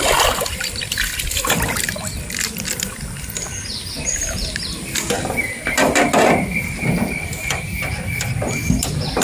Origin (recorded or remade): remade